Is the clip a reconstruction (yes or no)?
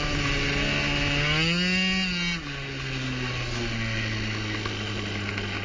no